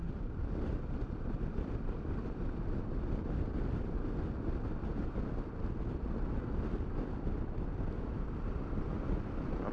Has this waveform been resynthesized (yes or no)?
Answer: no